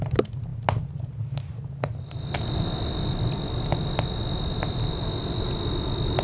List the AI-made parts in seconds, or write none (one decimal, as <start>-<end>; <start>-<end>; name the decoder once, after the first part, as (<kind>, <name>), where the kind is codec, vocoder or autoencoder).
none